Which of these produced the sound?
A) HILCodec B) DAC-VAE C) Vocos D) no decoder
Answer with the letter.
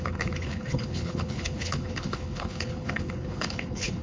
A